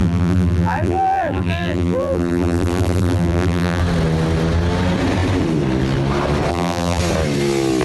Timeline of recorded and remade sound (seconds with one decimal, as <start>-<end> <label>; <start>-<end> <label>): 0.0-3.8 remade; 3.8-6.5 recorded; 6.5-7.0 remade; 7.0-7.8 recorded